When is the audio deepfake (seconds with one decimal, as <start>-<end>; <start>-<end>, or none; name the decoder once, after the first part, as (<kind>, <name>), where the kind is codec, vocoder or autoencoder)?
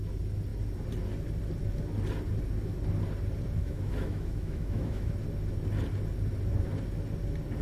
3.6-5.1 (autoencoder, DAC-VAE)